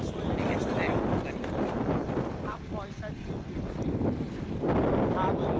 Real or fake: real